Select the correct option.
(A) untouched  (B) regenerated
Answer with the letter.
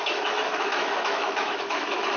B